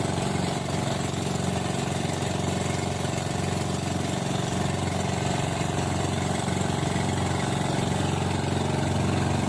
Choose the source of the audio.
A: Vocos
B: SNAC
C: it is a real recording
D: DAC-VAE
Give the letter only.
C